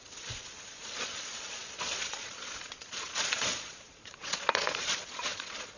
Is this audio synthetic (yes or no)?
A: yes